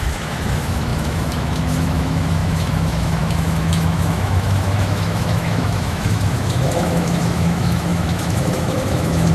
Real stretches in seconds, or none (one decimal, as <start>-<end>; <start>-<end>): none